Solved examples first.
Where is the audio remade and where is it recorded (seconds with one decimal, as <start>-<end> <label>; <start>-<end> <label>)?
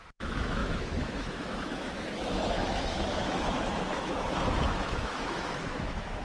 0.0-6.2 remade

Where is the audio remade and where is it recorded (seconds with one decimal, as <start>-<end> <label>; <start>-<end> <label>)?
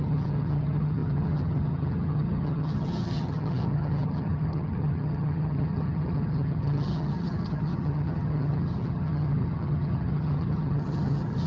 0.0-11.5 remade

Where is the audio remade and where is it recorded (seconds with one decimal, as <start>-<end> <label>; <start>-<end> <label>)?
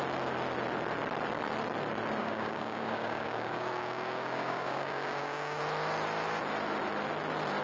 0.0-2.2 recorded; 2.2-5.6 remade; 5.6-7.6 recorded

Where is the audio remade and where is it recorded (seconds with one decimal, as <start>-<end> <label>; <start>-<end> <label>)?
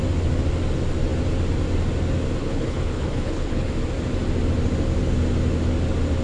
0.0-2.4 recorded; 2.4-3.7 remade; 3.7-6.2 recorded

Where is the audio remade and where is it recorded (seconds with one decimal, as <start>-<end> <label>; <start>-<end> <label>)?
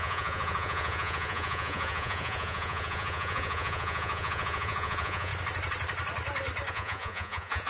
0.0-5.3 remade; 5.3-6.7 recorded; 6.7-7.7 remade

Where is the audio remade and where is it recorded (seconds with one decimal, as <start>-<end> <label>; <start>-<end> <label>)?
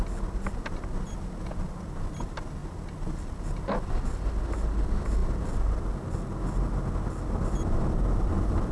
0.0-8.7 recorded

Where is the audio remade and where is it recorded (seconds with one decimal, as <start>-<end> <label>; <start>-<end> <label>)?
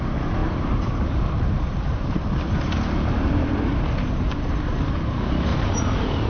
0.0-0.4 recorded; 0.4-3.8 remade; 3.8-5.5 recorded; 5.5-6.3 remade